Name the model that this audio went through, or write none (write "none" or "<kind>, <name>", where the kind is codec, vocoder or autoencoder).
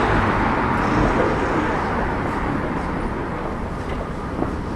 none